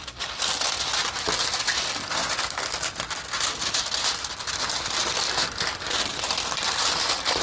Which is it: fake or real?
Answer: real